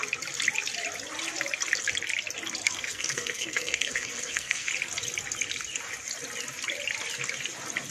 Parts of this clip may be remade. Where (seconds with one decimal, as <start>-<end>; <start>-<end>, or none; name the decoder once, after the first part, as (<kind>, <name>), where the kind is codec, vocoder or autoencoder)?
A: 2.6-4.7 (codec, SNAC)